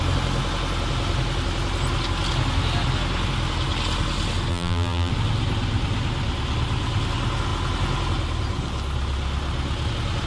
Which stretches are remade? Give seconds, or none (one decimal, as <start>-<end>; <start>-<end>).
4.5-5.1